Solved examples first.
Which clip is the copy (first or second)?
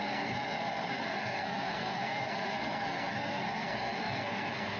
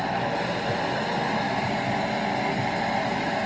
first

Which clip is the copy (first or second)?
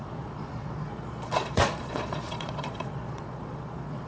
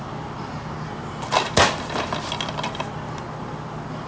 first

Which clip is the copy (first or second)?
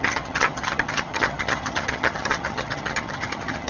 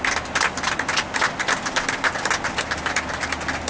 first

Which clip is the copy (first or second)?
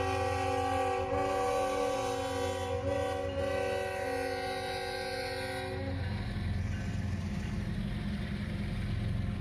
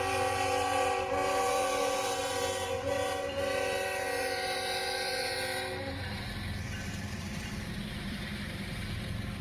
second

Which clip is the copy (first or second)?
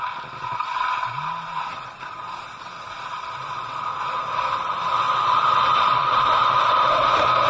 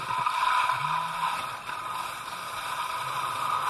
second